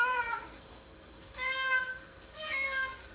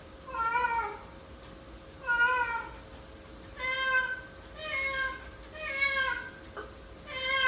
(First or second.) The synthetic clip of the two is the first